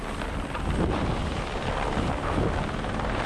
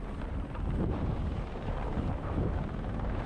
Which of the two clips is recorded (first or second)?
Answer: first